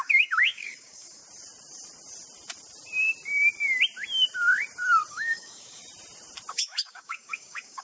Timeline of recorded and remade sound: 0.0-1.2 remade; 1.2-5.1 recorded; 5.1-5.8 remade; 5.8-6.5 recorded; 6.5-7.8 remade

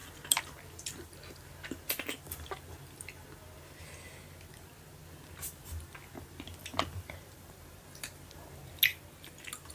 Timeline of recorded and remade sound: 0.0-6.7 recorded; 6.7-7.8 remade; 7.8-9.7 recorded

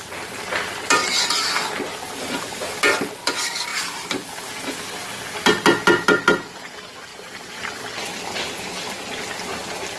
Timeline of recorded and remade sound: 0.0-3.7 recorded; 3.7-4.5 remade; 4.5-7.1 recorded; 7.1-7.6 remade; 7.6-10.0 recorded

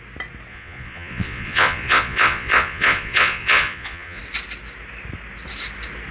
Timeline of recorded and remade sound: 0.0-0.5 recorded; 0.5-4.2 remade; 4.2-6.1 recorded